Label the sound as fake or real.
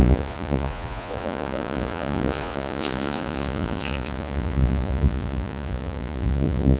fake